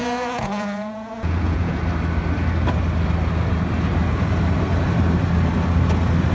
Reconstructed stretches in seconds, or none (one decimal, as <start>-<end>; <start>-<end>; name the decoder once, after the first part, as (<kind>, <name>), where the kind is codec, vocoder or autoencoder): 0.0-1.8 (vocoder, Vocos)